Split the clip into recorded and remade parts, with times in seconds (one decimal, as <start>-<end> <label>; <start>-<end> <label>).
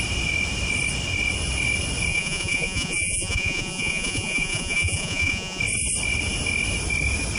0.0-2.1 recorded; 2.1-5.6 remade; 5.6-7.4 recorded